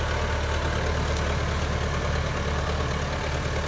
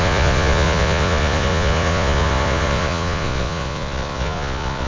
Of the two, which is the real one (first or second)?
first